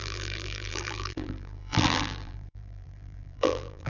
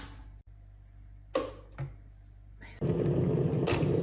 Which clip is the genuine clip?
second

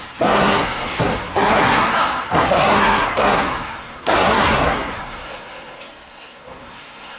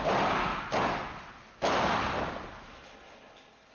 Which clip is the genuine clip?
second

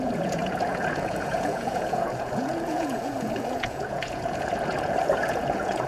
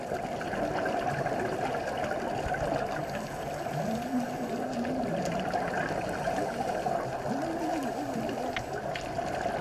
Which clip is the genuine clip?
second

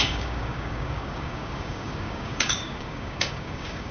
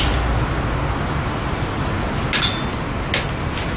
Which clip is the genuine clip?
second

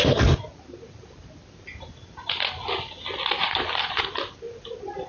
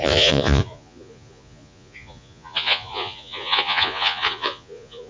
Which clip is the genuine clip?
first